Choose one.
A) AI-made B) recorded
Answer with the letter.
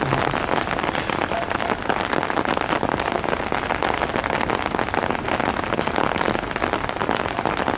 B